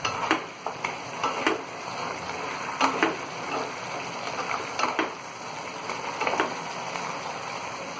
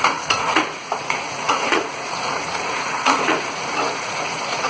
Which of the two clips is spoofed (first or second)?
second